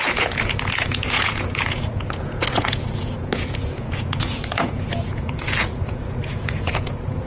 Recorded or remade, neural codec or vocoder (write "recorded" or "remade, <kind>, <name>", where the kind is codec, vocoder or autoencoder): remade, vocoder, Vocos